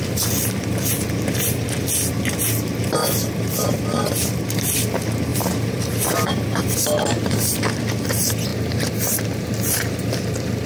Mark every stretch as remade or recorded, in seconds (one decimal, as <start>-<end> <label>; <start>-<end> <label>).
0.0-3.0 recorded; 3.0-4.5 remade; 4.5-5.3 recorded; 5.3-6.6 remade; 6.6-10.7 recorded